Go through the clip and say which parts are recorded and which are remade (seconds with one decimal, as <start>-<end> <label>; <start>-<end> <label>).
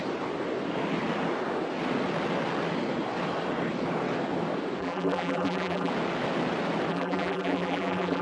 0.0-4.8 recorded; 4.8-5.9 remade; 5.9-6.9 recorded; 6.9-8.2 remade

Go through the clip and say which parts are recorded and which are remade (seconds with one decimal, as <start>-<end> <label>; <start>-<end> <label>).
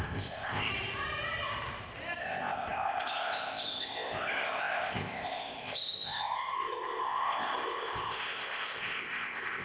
0.0-0.7 remade; 0.7-2.2 recorded; 2.2-9.6 remade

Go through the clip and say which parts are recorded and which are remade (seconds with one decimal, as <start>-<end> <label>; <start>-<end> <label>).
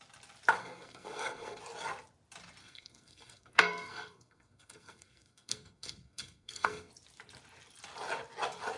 0.0-0.6 recorded; 0.6-1.6 remade; 1.6-2.6 recorded; 2.6-6.9 remade; 6.9-8.8 recorded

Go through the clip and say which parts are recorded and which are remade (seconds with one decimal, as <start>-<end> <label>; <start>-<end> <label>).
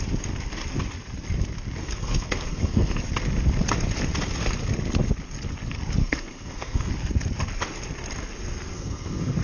0.0-1.8 recorded; 1.8-3.0 remade; 3.0-6.0 recorded; 6.0-6.9 remade; 6.9-8.7 recorded; 8.7-9.4 remade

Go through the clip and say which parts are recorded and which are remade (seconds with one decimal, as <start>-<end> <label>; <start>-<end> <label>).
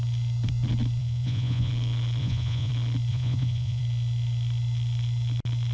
0.0-1.0 recorded; 1.0-1.7 remade; 1.7-2.2 recorded; 2.2-2.7 remade; 2.7-3.1 recorded; 3.1-3.8 remade; 3.8-5.7 recorded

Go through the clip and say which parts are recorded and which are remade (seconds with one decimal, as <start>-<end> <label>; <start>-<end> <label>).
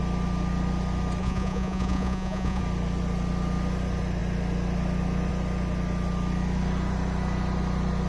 0.0-1.2 recorded; 1.2-2.6 remade; 2.6-8.1 recorded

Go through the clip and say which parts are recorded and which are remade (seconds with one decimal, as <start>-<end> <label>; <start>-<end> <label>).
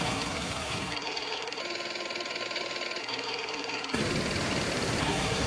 0.0-1.6 remade; 1.6-3.0 recorded; 3.0-4.0 remade; 4.0-5.0 recorded; 5.0-5.5 remade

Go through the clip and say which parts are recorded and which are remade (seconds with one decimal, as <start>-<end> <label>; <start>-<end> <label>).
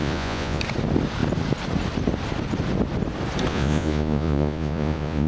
0.0-0.6 remade; 0.6-3.5 recorded; 3.5-5.3 remade